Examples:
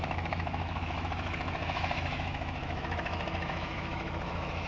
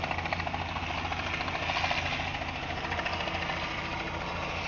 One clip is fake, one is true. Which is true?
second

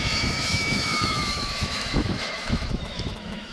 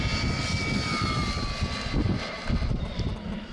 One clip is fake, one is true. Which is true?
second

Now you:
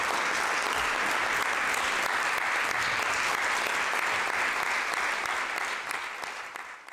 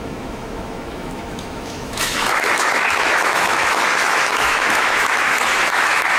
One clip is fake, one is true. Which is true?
first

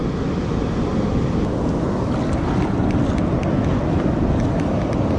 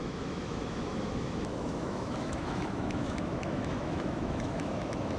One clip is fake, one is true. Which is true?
first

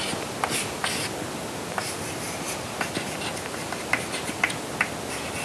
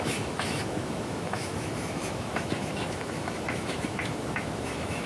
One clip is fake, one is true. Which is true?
first